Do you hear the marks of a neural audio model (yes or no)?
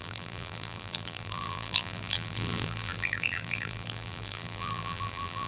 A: yes